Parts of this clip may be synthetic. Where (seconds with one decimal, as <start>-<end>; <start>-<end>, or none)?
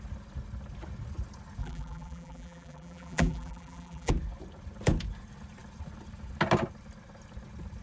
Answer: 1.6-4.1